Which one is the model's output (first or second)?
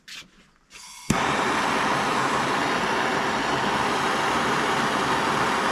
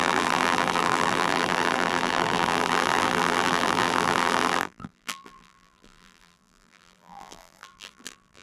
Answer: second